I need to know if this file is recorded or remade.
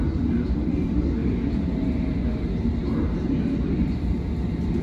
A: recorded